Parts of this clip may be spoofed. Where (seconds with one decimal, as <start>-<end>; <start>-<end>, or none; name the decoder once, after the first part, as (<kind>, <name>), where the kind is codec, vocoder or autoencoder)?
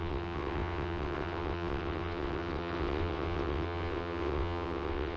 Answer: 0.0-5.2 (vocoder, WaveNeXt)